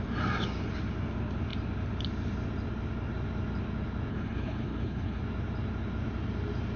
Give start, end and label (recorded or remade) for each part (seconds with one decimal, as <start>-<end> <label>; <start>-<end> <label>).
0.0-4.1 recorded; 4.1-5.2 remade; 5.2-6.8 recorded